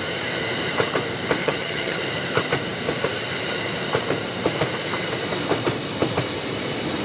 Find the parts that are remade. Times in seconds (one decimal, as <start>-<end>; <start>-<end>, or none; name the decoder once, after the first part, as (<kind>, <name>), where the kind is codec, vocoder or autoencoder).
1.4-2.0 (vocoder, HiFi-GAN)